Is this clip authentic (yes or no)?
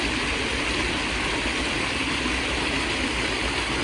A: yes